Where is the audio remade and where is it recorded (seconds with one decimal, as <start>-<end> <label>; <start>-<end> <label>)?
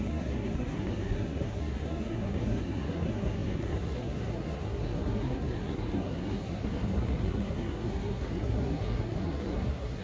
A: 0.0-10.0 remade